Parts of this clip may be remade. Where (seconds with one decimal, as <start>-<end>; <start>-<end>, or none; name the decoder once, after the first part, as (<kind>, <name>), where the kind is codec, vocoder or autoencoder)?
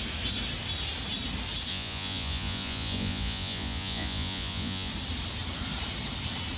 1.7-4.9 (vocoder, Vocos)